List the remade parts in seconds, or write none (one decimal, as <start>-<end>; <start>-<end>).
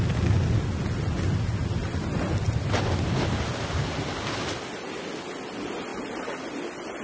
none